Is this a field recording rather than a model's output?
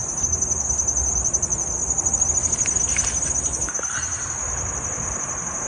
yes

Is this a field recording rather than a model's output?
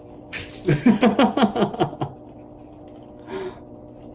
yes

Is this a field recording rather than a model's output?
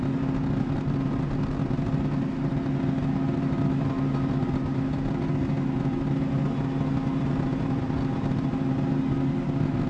yes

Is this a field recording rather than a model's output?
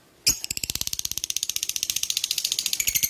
yes